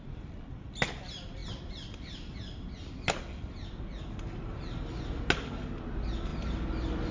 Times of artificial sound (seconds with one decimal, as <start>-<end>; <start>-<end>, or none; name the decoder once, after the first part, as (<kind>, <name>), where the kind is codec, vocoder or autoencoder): none